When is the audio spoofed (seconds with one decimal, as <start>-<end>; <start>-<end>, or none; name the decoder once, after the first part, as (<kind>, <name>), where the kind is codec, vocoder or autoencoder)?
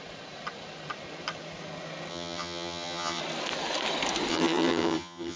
2.1-3.2 (vocoder, HiFi-GAN); 4.3-5.4